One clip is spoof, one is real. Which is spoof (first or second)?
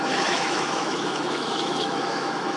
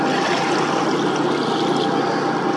first